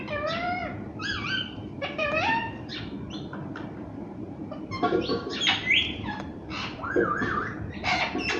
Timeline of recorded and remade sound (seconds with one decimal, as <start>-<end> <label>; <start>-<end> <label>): 0.0-0.6 recorded; 0.6-2.8 remade; 2.8-3.4 recorded; 3.4-7.6 remade; 7.6-8.4 recorded